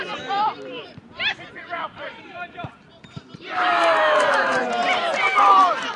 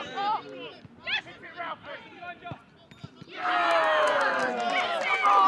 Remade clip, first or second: first